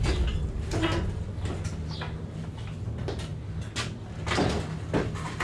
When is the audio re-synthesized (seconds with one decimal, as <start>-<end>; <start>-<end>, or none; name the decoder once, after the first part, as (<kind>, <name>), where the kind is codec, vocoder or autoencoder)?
none

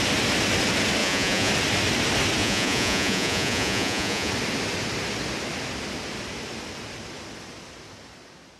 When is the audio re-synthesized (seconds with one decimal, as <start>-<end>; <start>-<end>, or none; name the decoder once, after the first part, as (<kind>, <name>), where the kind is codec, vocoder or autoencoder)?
1.0-1.5 (vocoder, Vocos); 2.4-4.3

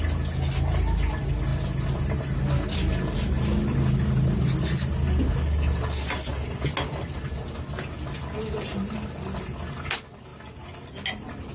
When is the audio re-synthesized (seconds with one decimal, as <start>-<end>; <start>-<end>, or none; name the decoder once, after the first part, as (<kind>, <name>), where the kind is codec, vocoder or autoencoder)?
none

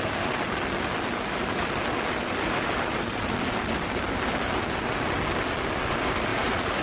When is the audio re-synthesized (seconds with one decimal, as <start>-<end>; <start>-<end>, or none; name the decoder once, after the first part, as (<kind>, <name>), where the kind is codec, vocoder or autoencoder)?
6.3-6.8 (vocoder, Vocos)

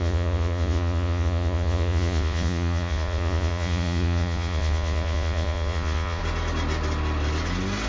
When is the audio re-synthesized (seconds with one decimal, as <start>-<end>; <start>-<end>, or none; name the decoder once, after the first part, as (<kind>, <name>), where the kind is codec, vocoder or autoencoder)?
0.0-6.2 (vocoder, Vocos)

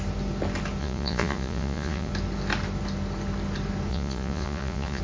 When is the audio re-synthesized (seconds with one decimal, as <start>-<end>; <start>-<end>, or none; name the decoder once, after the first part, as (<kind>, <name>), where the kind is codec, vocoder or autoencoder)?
0.8-2.1 (vocoder, Vocos); 3.9-5.0

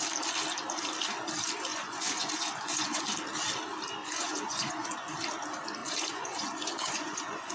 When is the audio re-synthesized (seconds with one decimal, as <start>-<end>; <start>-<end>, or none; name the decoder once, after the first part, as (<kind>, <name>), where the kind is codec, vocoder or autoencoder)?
1.7-3.0 (vocoder, Vocos); 4.0-5.1; 5.8-7.5